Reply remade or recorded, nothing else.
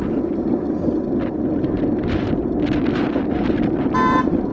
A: remade